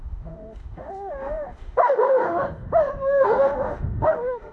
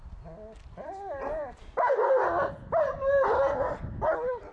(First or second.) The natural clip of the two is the second